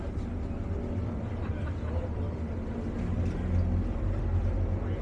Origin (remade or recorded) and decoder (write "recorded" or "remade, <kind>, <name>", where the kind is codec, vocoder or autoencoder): recorded